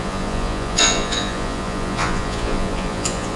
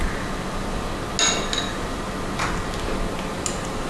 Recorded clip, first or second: second